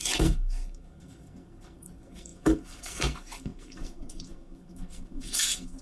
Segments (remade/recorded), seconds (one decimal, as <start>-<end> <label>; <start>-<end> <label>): 0.0-5.8 remade